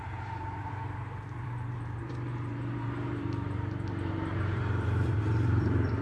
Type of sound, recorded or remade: remade